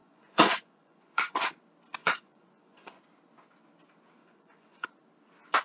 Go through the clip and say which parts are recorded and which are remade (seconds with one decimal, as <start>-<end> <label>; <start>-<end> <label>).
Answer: 0.0-1.5 remade; 1.5-2.0 recorded; 2.0-3.0 remade; 3.0-4.2 recorded; 4.2-4.9 remade; 4.9-5.6 recorded